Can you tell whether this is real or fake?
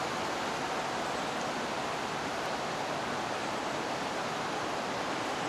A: real